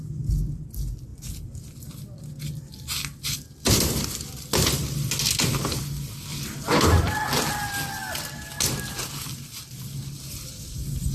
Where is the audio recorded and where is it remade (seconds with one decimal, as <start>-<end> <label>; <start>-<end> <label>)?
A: 0.0-11.1 recorded